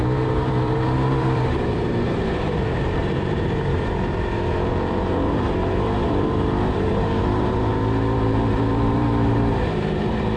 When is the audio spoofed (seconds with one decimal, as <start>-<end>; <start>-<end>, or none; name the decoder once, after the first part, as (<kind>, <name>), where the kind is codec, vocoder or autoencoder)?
0.0-10.4 (vocoder, BigVGAN v2)